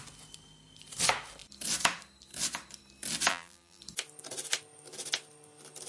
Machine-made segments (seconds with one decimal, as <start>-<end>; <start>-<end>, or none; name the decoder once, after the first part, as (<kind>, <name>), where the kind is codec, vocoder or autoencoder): 3.3-3.8 (vocoder, BigVGAN v2)